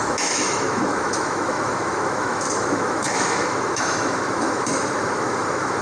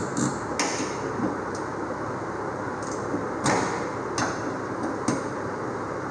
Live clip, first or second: second